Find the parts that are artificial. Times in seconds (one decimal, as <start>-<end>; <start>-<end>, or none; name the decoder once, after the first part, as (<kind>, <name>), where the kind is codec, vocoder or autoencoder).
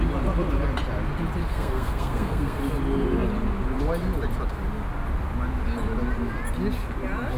1.4-2.6 (codec, SNAC)